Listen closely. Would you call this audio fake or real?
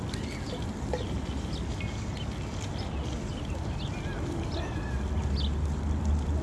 real